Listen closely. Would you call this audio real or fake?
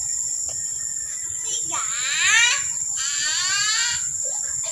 fake